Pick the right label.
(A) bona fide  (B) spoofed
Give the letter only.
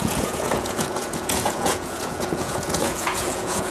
B